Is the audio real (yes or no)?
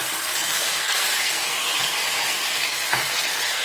no